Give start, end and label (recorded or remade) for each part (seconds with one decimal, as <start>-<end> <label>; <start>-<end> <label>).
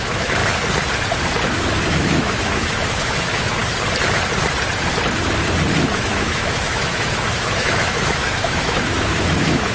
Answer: 0.0-0.4 remade; 0.4-1.9 recorded; 1.9-3.6 remade; 3.6-5.9 recorded; 5.9-9.7 remade